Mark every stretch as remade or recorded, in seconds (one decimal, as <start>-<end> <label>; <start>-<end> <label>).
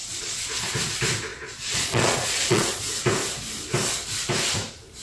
0.0-0.7 remade; 0.7-1.3 recorded; 1.3-2.8 remade; 2.8-5.0 recorded